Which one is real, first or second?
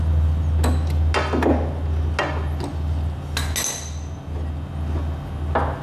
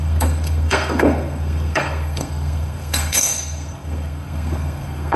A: first